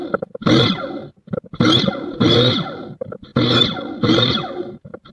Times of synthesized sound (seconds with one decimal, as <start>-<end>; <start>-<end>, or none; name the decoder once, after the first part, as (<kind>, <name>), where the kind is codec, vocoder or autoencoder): 2.8-3.3 (vocoder, BigVGAN v2); 4.0-5.1